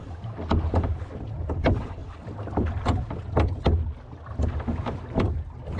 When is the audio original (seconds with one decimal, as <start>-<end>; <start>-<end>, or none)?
2.0-5.8